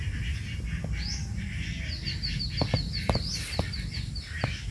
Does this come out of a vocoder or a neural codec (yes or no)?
no